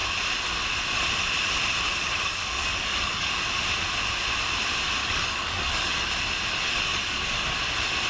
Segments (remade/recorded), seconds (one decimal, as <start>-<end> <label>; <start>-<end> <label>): 0.0-2.0 recorded; 2.0-3.3 remade; 3.3-5.0 recorded; 5.0-6.1 remade; 6.1-6.5 recorded; 6.5-7.2 remade; 7.2-8.1 recorded